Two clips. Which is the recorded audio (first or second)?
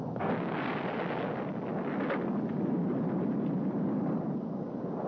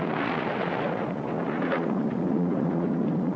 first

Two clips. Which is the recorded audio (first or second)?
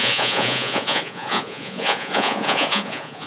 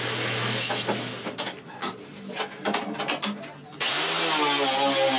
second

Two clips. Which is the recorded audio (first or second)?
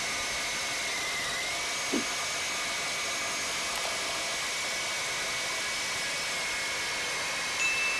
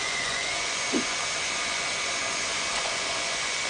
first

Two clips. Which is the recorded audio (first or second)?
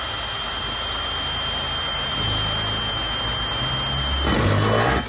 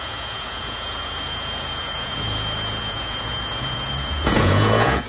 first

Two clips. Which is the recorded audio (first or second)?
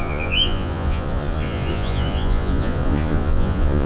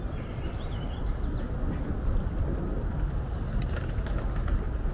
second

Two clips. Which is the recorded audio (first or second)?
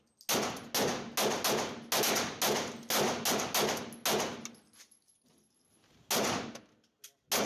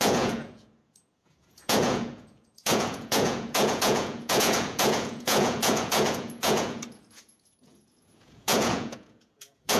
first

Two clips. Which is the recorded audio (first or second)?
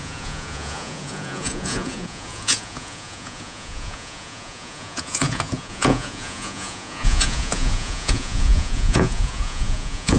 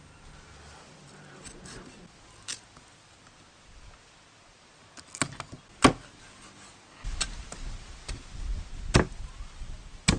second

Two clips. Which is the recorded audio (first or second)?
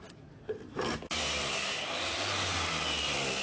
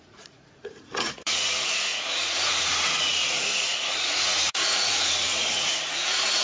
first